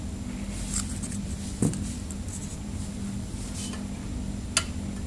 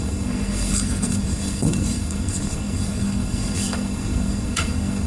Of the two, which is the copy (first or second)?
second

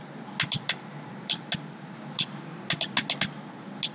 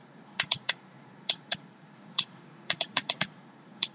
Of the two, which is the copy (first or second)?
second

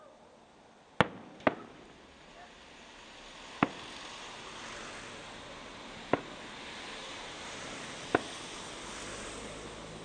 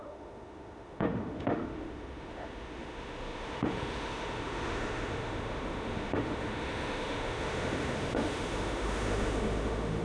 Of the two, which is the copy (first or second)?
second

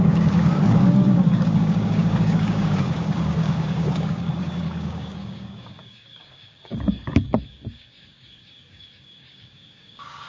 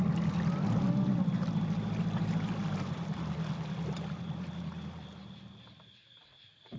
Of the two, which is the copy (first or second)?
first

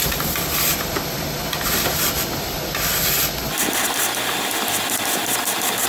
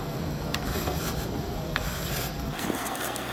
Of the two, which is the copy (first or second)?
second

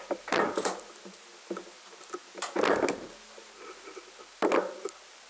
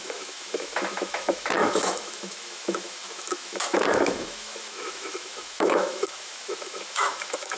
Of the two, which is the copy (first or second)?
second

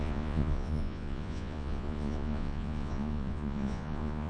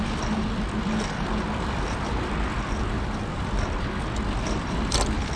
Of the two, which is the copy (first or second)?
first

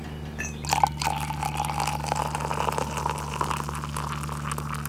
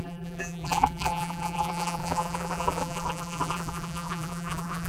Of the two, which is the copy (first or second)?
second